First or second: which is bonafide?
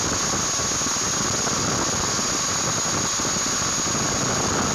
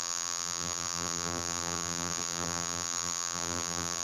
first